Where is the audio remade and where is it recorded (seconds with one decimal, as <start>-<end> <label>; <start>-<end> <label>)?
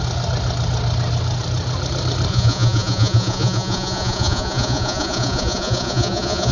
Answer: 0.0-2.3 recorded; 2.3-6.5 remade